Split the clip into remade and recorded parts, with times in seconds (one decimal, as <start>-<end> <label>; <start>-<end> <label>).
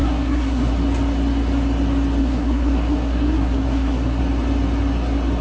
0.0-0.7 remade; 0.7-2.2 recorded; 2.2-4.2 remade; 4.2-5.4 recorded